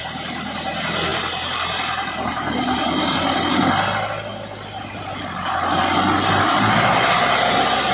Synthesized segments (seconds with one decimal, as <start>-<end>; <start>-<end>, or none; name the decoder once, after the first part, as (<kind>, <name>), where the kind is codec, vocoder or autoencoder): none